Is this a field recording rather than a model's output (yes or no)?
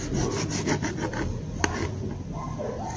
yes